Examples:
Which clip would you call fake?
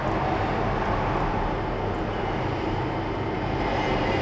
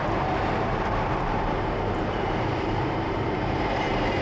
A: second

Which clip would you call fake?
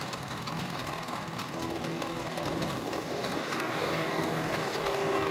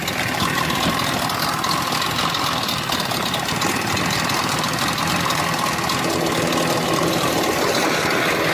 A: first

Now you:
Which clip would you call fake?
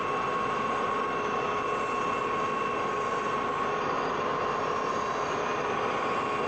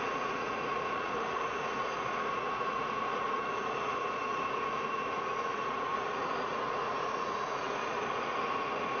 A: second